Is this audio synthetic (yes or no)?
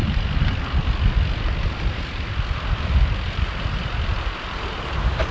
no